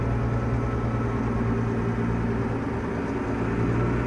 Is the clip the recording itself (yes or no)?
yes